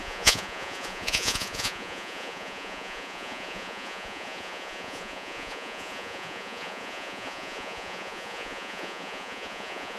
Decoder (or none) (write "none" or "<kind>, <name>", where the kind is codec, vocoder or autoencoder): vocoder, Vocos